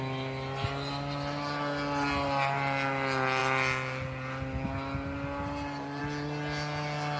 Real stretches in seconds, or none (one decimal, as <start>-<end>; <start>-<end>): 0.0-7.2